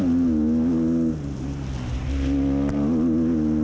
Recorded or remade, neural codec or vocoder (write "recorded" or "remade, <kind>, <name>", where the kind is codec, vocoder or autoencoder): recorded